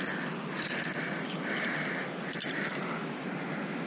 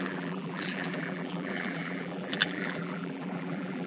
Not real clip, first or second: second